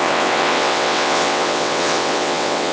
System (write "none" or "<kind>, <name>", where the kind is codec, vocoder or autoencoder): vocoder, WaveNeXt